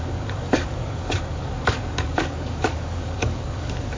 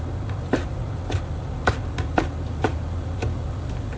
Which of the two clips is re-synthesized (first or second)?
first